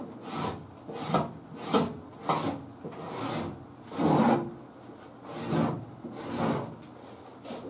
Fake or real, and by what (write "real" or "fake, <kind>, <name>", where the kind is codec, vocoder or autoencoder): real